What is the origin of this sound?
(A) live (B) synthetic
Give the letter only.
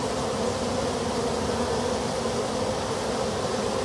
A